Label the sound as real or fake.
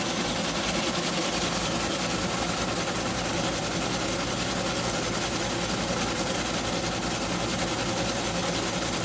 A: real